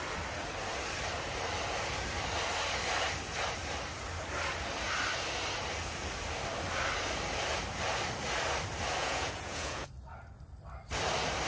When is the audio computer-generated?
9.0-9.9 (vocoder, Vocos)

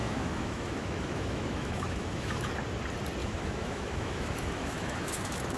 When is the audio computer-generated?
0.0-2.5 (autoencoder, DAC-VAE); 3.2-5.6

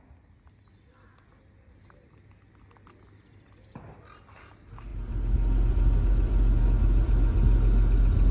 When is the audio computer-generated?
none

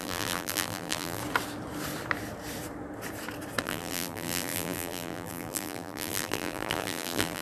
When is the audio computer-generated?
0.0-1.2 (vocoder, BigVGAN v2); 3.6-7.4

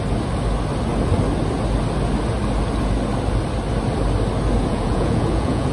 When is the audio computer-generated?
4.7-5.7 (vocoder, Vocos)

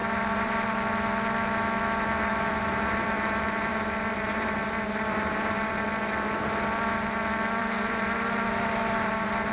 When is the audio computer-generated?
0.0-0.8 (vocoder, BigVGAN v2); 2.3-3.1; 3.7-5.7; 7.6-9.5